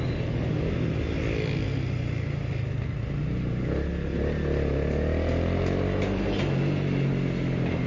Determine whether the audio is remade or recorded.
recorded